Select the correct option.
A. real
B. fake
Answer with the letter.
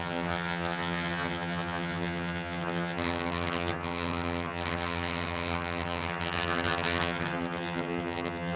B